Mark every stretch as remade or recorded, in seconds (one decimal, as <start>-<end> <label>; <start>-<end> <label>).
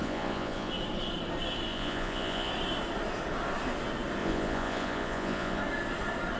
0.0-0.7 remade; 0.7-1.7 recorded; 1.7-2.5 remade; 2.5-4.2 recorded; 4.2-5.6 remade; 5.6-6.4 recorded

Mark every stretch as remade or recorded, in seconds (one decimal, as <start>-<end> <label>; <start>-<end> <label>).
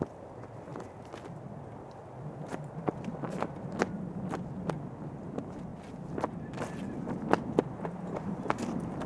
0.0-9.1 recorded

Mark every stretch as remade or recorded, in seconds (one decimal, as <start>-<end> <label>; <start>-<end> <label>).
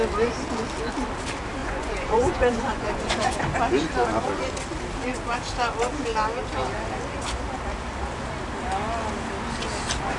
0.0-1.6 recorded; 1.6-3.4 remade; 3.4-10.2 recorded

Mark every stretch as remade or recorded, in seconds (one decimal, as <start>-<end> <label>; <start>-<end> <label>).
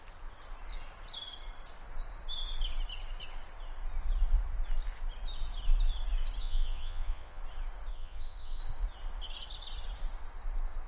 0.0-6.4 recorded; 6.4-7.4 remade; 7.4-7.9 recorded; 7.9-8.6 remade; 8.6-10.9 recorded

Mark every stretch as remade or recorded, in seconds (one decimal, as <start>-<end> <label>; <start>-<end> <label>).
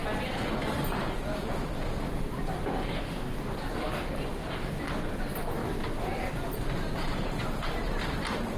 0.0-8.6 recorded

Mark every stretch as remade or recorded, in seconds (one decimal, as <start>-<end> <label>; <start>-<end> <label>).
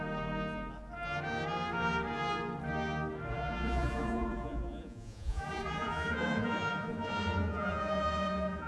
0.0-3.3 recorded; 3.3-8.7 remade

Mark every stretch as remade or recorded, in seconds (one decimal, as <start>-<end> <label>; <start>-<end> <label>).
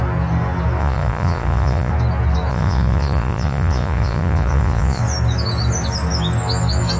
0.0-0.8 recorded; 0.8-1.9 remade; 1.9-2.5 recorded; 2.5-5.0 remade; 5.0-7.0 recorded